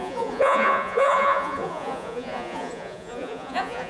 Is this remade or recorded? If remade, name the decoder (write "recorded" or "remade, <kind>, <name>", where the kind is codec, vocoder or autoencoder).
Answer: remade, vocoder, Vocos